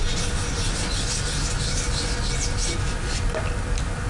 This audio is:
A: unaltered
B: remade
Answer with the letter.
A